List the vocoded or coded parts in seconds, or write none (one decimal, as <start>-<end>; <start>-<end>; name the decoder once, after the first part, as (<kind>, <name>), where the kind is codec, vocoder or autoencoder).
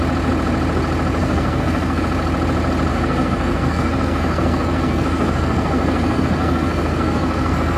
1.2-2.0 (codec, SNAC); 2.9-7.8